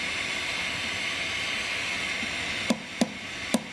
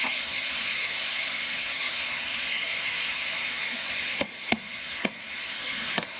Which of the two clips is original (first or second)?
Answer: first